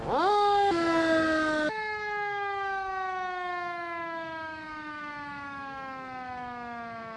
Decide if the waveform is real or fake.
fake